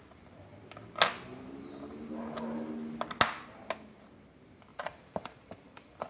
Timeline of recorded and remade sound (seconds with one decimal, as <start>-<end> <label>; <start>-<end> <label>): 0.0-4.7 recorded; 4.7-6.1 remade